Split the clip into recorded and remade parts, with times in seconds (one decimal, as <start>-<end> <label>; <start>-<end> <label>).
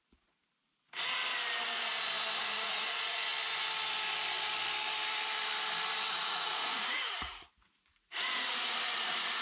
0.0-0.4 remade; 0.4-2.4 recorded; 2.4-3.3 remade; 3.3-6.1 recorded; 6.1-9.4 remade